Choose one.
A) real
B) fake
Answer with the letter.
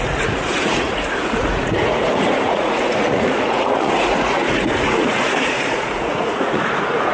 B